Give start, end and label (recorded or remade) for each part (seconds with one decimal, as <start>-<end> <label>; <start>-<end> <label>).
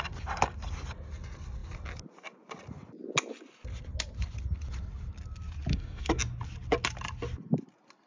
0.0-5.7 recorded; 5.7-6.2 remade; 6.2-8.1 recorded